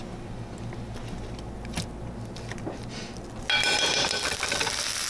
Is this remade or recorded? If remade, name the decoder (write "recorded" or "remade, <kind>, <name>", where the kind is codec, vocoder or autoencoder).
recorded